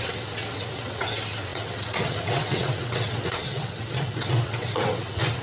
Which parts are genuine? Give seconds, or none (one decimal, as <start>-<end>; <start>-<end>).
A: none